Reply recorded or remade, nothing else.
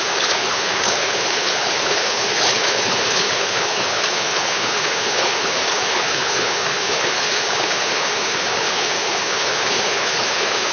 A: remade